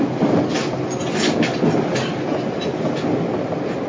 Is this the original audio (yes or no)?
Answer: yes